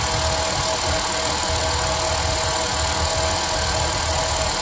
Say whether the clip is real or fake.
real